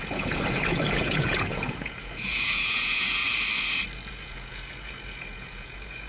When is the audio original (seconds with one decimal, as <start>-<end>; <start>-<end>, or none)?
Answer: 3.2-4.1